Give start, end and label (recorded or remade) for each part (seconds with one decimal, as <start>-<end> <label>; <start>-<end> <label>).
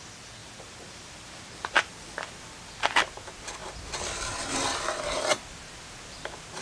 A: 0.0-0.4 recorded; 0.4-1.9 remade; 1.9-6.6 recorded